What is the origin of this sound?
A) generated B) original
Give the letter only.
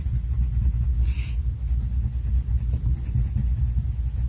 B